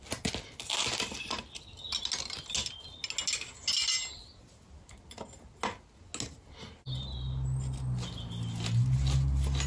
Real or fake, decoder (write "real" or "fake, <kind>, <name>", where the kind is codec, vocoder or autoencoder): real